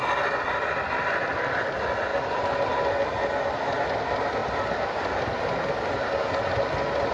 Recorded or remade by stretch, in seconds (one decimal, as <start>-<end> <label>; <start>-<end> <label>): 0.0-2.1 recorded; 2.1-2.7 remade; 2.7-4.4 recorded; 4.4-5.5 remade; 5.5-7.1 recorded